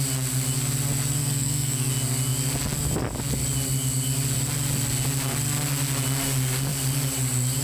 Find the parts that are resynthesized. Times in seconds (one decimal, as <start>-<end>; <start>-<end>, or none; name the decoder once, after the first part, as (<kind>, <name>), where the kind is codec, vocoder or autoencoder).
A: 1.2-1.9 (codec, SNAC)